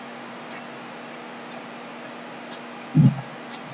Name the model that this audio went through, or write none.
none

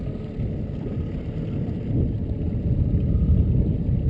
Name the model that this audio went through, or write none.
none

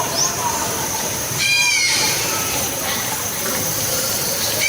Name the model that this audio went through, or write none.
vocoder, BigVGAN v2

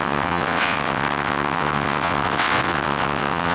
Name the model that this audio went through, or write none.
vocoder, WaveNeXt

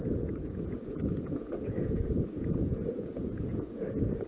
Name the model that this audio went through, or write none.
vocoder, Vocos